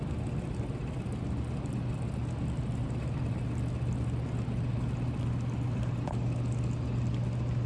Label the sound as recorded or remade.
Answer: recorded